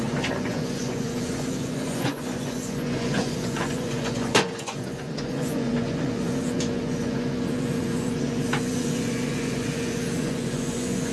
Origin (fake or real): fake